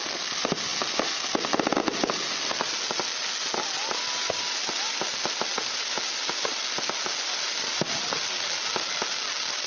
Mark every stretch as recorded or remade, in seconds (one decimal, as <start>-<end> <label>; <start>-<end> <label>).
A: 0.0-9.7 recorded